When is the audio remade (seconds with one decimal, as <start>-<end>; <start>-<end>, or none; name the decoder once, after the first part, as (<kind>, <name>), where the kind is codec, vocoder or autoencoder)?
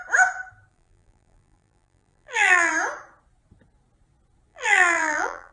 0.7-2.7 (vocoder, BigVGAN v2); 4.5-5.5